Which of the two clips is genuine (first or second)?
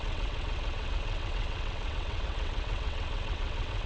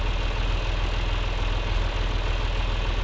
second